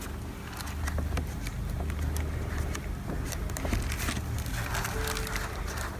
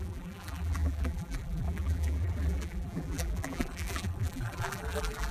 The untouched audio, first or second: first